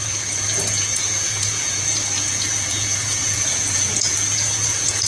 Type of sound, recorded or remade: remade